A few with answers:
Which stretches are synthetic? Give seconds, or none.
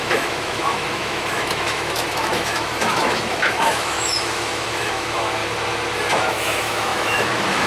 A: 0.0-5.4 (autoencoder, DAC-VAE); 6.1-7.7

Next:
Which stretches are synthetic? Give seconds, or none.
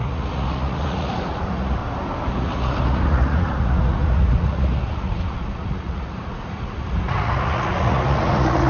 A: 0.0-1.8 (vocoder, Vocos); 2.3-8.7